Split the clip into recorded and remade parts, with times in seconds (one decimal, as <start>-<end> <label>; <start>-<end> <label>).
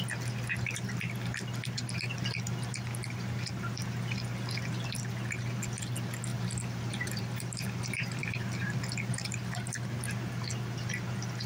0.0-6.3 recorded; 6.3-8.4 remade; 8.4-11.5 recorded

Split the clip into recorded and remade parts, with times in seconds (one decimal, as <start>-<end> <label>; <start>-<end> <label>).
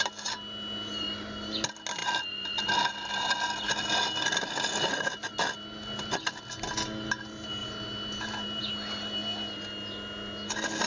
0.0-2.0 recorded; 2.0-2.8 remade; 2.8-7.6 recorded; 7.6-8.6 remade; 8.6-10.9 recorded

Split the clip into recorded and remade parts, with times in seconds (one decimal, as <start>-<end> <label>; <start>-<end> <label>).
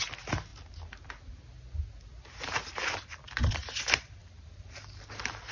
0.0-4.2 recorded; 4.2-5.5 remade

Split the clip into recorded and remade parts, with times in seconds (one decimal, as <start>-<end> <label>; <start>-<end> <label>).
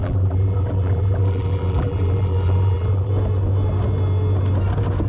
0.0-3.1 remade; 3.1-5.1 recorded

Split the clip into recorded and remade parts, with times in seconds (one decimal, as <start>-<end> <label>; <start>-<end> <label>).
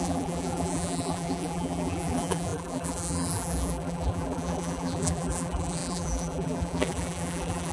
0.0-7.7 remade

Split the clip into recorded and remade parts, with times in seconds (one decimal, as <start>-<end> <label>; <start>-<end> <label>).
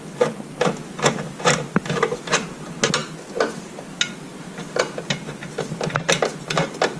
0.0-7.0 recorded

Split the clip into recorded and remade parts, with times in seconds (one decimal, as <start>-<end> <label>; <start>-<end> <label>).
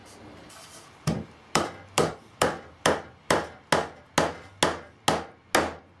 0.0-3.6 remade; 3.6-6.0 recorded